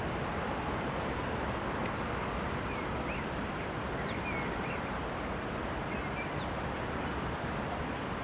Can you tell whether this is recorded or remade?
recorded